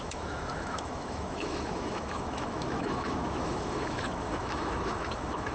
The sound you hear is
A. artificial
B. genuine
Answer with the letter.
A